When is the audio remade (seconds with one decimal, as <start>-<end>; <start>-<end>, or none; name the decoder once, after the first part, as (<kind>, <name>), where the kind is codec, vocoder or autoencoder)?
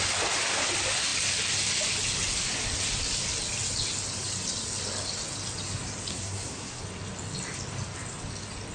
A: 6.1-6.8 (codec, SNAC)